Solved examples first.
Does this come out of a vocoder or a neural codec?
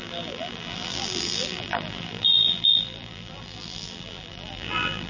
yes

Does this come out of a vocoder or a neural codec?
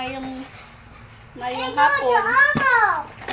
no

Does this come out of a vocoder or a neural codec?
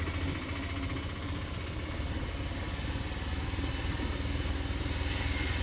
no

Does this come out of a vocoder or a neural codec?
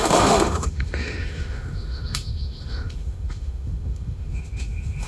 yes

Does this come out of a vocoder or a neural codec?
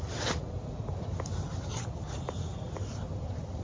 no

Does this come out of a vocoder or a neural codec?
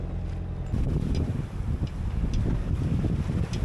no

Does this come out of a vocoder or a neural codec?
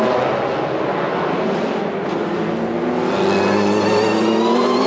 no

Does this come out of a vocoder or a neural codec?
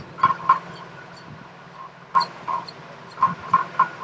no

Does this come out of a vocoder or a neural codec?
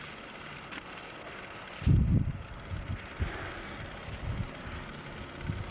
no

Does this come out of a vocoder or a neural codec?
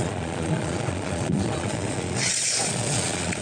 yes